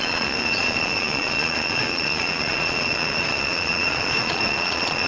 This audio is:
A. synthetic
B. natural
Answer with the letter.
A